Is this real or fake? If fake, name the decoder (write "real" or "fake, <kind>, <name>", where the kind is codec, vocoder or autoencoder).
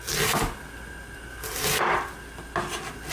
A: real